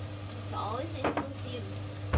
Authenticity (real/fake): real